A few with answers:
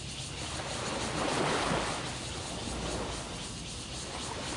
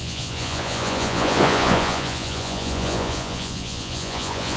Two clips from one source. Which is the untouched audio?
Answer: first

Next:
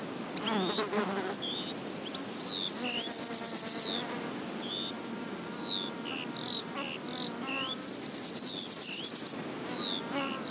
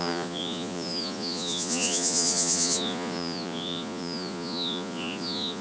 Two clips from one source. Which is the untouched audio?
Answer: first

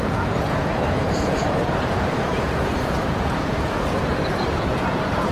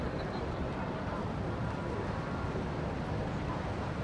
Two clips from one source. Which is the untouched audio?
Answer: second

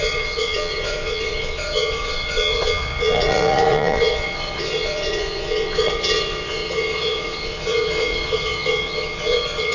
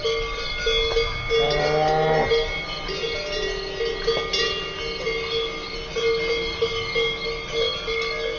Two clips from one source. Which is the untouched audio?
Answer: second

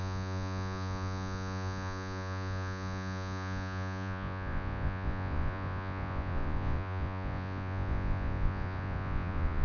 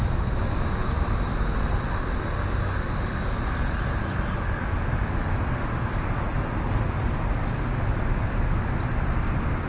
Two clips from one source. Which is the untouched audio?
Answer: second